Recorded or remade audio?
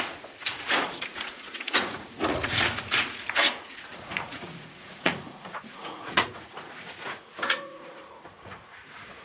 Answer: remade